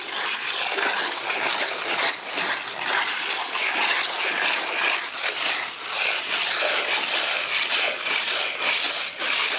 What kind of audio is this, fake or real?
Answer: real